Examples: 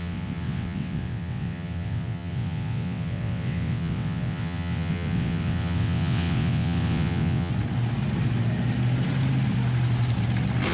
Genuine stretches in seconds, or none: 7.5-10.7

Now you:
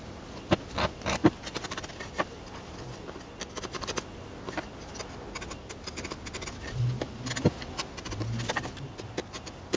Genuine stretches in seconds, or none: 0.0-9.8

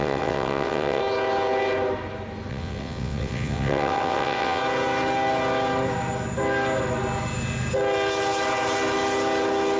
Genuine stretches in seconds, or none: 1.0-2.5; 4.6-9.8

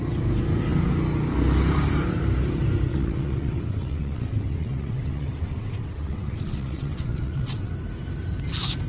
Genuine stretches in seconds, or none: 0.0-2.9; 7.7-8.9

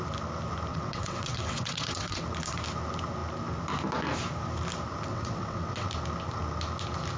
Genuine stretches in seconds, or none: 0.0-0.7; 2.2-5.1; 5.9-7.2

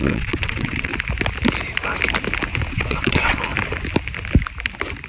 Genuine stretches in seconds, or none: 0.9-2.7; 3.5-5.1

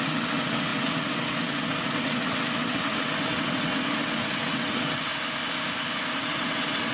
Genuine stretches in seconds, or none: 5.1-6.2

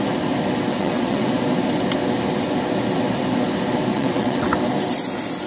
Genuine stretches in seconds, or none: 0.0-0.7; 1.3-3.9; 4.5-5.5